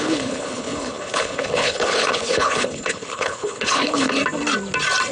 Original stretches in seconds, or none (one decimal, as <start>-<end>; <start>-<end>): 4.2-5.1